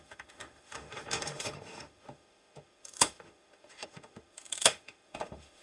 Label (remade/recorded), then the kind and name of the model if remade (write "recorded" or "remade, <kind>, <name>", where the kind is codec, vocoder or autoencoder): remade, autoencoder, DAC-VAE